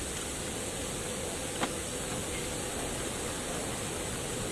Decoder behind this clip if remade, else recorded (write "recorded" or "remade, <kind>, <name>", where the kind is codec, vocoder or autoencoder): recorded